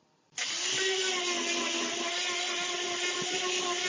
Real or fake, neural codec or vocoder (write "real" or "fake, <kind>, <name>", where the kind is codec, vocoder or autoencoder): real